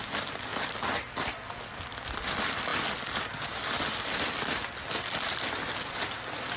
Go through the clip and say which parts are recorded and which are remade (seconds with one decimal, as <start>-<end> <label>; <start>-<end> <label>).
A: 0.0-6.6 recorded